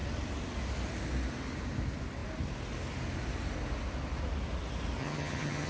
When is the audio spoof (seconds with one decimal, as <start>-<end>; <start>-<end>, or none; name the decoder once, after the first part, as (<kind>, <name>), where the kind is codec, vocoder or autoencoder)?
5.0-5.7 (vocoder, HiFi-GAN)